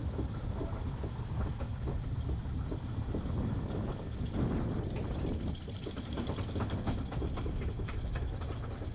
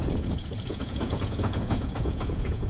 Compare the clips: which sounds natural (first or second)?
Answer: first